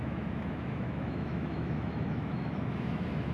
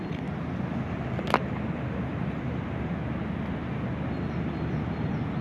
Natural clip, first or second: second